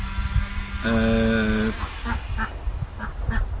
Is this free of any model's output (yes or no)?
yes